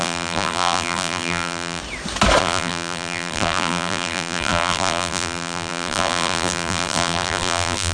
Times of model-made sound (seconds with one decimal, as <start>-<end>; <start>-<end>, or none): 0.0-1.8; 2.4-7.9